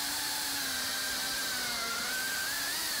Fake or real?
fake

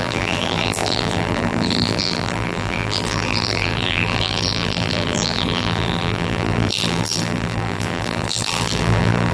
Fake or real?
fake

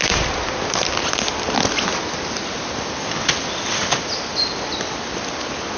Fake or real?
real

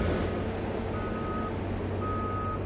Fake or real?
real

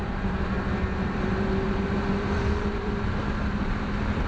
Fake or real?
fake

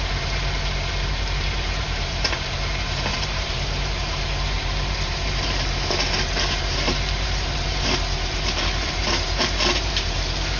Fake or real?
fake